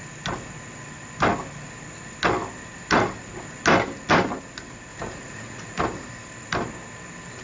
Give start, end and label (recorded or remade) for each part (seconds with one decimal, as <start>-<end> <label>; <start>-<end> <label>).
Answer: 0.0-4.9 recorded; 4.9-5.8 remade; 5.8-7.4 recorded

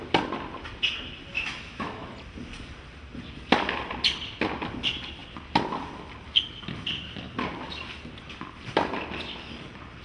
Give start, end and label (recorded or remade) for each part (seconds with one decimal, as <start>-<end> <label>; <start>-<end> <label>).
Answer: 0.0-1.3 recorded; 1.3-2.1 remade; 2.1-10.0 recorded

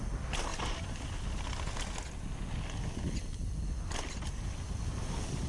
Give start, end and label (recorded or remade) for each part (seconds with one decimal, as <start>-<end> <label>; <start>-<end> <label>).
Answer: 0.0-5.5 recorded

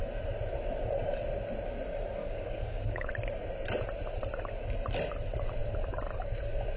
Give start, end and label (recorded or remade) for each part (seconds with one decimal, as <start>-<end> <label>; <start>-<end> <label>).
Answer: 0.0-2.2 recorded; 2.2-3.1 remade; 3.1-6.8 recorded

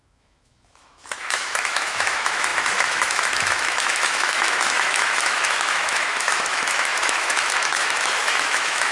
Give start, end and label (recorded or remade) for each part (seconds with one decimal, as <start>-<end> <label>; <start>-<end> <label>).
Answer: 0.0-8.9 remade